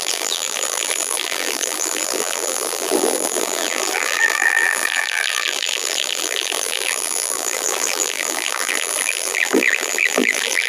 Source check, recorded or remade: remade